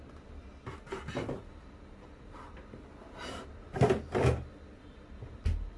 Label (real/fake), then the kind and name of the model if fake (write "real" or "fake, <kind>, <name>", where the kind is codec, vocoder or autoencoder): real